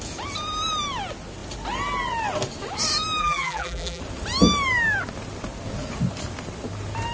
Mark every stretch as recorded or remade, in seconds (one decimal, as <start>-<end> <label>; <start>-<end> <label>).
0.0-3.2 recorded; 3.2-4.0 remade; 4.0-7.1 recorded